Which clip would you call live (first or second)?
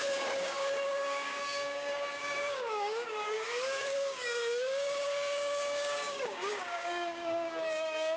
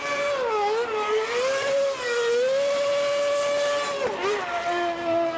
second